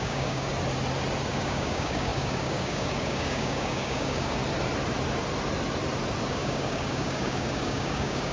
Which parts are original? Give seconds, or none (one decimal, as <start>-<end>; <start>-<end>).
0.5-1.3; 4.4-6.3